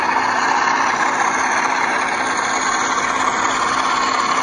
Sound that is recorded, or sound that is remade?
recorded